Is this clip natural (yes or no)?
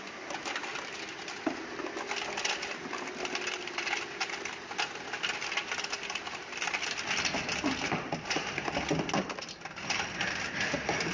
yes